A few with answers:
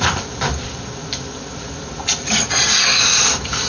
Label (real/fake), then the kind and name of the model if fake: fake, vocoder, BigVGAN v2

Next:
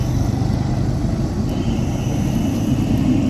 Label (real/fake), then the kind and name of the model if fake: real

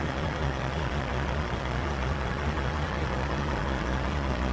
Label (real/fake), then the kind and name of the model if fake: fake, vocoder, Vocos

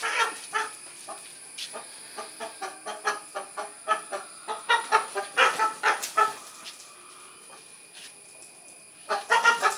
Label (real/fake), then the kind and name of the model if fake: real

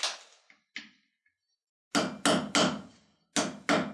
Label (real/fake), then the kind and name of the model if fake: real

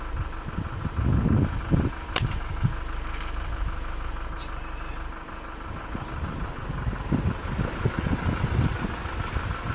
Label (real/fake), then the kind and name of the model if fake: real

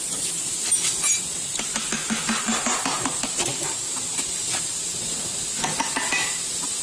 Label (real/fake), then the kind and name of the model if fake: real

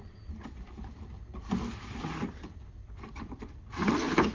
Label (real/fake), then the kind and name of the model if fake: fake, vocoder, BigVGAN v2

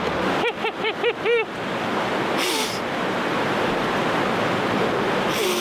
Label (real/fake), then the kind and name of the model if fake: real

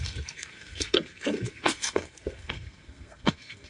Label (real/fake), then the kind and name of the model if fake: fake, codec, SNAC